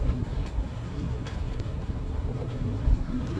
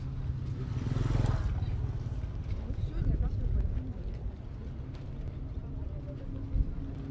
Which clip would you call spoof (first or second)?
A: first